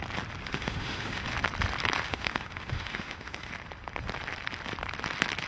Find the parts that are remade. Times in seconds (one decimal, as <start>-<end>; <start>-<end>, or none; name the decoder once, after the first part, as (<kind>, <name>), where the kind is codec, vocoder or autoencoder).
0.5-1.2 (autoencoder, DAC-VAE); 2.1-3.5